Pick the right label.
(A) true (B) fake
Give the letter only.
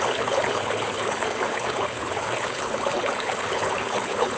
B